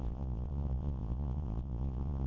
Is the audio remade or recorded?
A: remade